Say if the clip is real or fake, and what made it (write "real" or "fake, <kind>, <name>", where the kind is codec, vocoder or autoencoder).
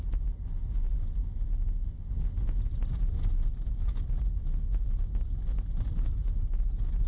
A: real